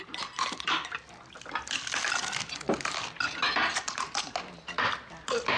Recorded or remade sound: recorded